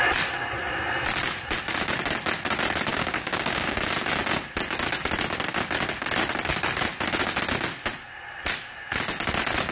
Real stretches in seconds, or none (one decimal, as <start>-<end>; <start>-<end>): 0.0-2.9; 3.8-9.7